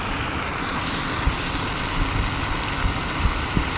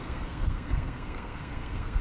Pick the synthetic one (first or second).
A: second